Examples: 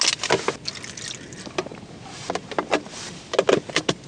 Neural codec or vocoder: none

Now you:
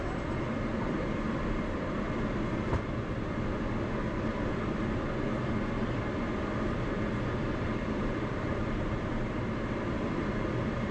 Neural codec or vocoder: vocoder, BigVGAN v2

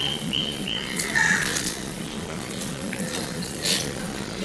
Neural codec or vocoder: vocoder, Vocos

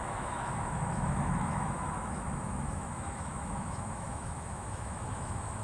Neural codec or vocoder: autoencoder, DAC-VAE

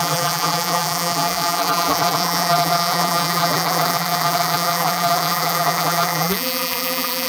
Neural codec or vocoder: vocoder, BigVGAN v2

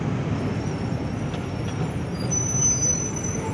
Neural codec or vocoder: none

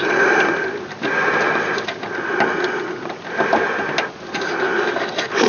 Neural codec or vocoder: none